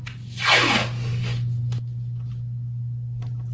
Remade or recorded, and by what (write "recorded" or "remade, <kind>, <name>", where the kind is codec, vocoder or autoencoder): recorded